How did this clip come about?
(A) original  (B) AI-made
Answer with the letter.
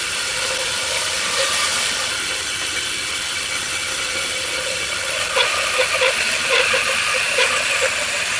A